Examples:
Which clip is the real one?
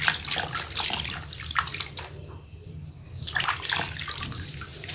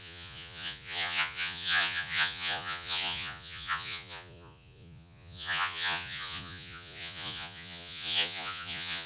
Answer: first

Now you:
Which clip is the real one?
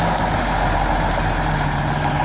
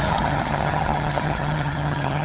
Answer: first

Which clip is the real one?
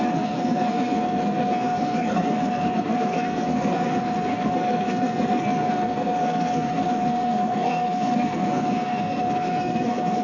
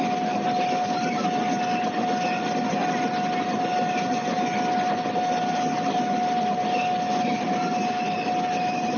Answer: second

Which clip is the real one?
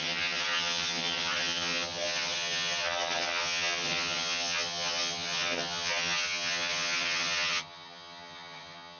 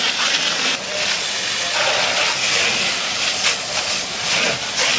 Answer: second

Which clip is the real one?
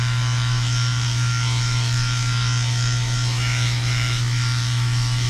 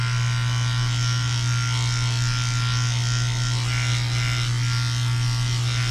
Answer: second